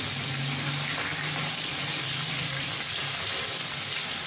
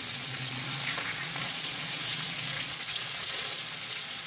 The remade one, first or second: second